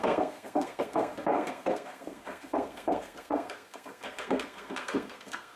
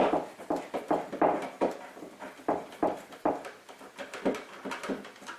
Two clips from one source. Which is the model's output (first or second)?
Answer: first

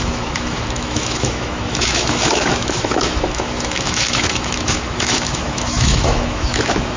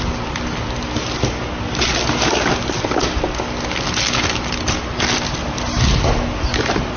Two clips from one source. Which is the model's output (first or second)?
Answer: first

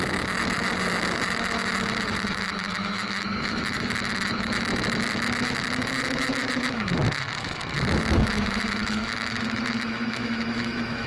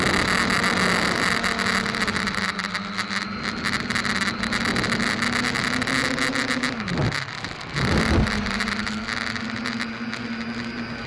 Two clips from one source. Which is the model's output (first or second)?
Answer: first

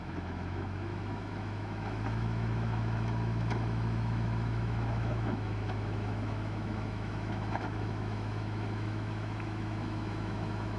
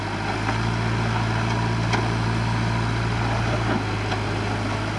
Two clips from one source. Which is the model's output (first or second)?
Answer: first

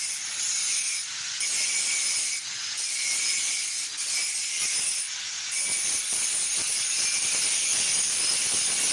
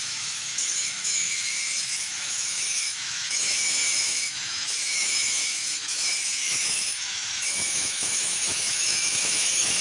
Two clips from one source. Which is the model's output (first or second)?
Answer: second